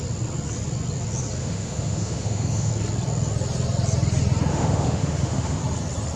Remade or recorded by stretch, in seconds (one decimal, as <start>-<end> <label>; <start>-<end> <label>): 0.0-1.4 recorded; 1.4-2.7 remade; 2.7-4.5 recorded; 4.5-5.6 remade; 5.6-6.2 recorded